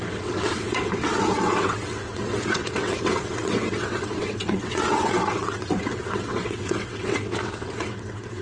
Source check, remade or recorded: remade